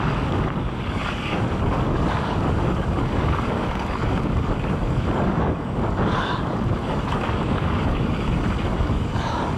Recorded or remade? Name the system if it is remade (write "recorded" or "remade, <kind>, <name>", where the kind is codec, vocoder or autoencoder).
remade, codec, DAC